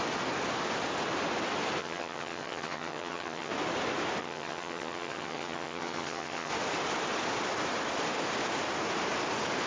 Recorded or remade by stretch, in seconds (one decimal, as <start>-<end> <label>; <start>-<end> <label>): 0.0-1.8 recorded; 1.8-3.5 remade; 3.5-4.2 recorded; 4.2-6.5 remade; 6.5-9.7 recorded